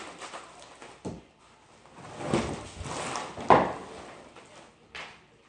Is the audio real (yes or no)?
yes